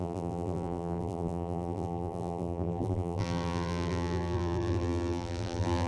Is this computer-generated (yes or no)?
yes